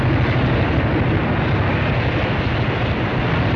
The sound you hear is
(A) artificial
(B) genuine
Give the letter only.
B